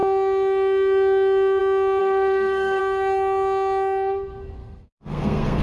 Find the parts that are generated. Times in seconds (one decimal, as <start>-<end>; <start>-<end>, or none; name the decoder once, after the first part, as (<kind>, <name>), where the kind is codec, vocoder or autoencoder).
2.0-2.8 (codec, SNAC); 4.6-5.6